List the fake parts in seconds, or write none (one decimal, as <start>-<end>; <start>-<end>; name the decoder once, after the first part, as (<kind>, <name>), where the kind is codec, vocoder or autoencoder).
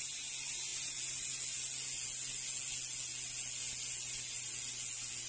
none